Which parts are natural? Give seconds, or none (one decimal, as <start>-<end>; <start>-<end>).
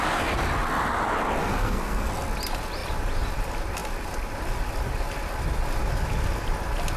0.0-1.4; 2.1-7.0